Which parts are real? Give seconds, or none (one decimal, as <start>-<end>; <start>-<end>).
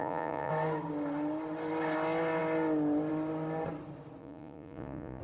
0.5-4.2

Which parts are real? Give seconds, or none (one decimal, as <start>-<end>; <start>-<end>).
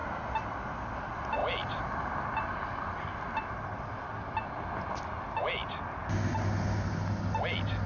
0.0-7.9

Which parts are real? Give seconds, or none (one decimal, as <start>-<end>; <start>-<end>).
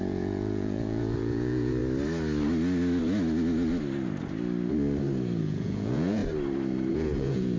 1.8-5.4; 6.2-6.9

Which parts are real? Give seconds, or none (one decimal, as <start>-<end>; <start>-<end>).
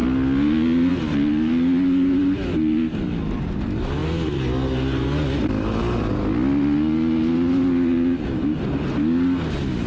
0.0-9.9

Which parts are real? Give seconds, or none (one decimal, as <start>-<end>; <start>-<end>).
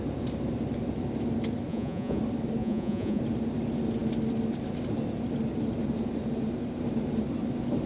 0.0-1.7; 2.2-2.6; 3.2-7.9